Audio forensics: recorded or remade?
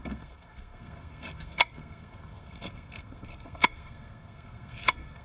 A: remade